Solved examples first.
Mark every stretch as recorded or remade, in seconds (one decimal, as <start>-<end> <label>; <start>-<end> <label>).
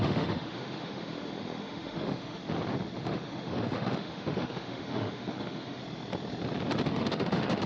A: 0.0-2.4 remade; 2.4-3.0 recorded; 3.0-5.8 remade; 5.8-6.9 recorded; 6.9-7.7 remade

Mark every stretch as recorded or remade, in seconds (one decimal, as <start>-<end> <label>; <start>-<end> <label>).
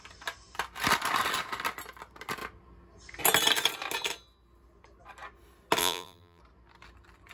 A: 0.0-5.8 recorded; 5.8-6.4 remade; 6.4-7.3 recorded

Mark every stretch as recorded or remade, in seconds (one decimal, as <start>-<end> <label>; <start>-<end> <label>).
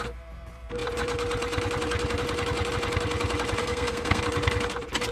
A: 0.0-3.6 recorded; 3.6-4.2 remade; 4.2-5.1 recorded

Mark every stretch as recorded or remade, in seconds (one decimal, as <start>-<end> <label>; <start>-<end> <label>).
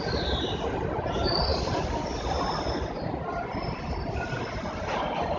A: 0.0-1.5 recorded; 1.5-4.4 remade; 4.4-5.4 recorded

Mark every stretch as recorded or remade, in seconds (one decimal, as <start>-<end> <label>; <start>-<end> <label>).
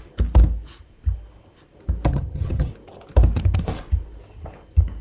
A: 0.0-2.1 recorded; 2.1-2.7 remade; 2.7-5.0 recorded